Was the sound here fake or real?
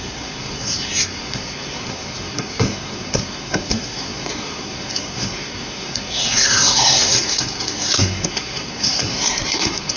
fake